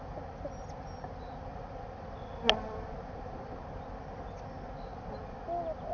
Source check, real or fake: real